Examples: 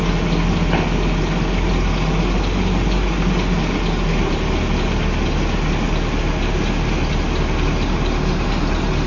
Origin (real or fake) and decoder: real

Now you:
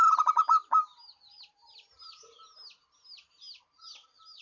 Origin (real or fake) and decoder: real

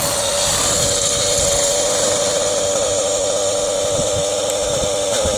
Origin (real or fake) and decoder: real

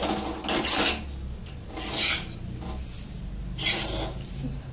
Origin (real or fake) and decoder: real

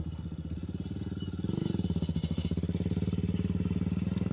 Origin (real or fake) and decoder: real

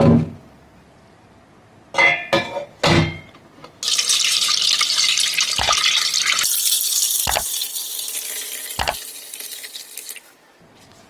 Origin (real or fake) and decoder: real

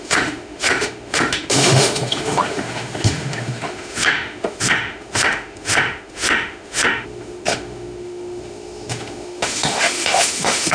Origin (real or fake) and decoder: fake, autoencoder, DAC-VAE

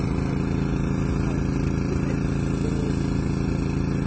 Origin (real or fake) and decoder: real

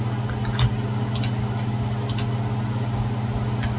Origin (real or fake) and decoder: real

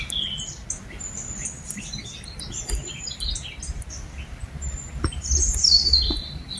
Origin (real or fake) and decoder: real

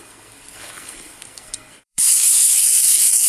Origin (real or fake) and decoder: fake, codec, SNAC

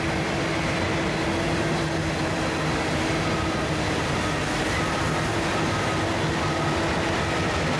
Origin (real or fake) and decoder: real